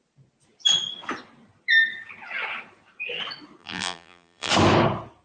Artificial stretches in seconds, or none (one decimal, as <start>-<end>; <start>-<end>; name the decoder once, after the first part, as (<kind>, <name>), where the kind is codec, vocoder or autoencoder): 3.6-4.5 (vocoder, BigVGAN v2)